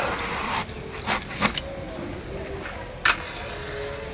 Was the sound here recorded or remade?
recorded